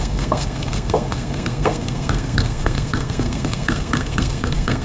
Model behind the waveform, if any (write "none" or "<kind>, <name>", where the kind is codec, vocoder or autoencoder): codec, SNAC